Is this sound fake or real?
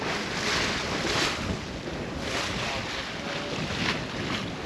real